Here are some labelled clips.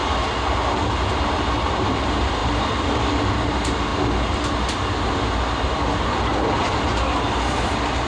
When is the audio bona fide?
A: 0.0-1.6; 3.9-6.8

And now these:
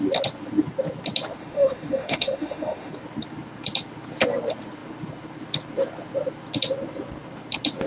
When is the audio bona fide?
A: 0.0-1.4; 2.9-7.9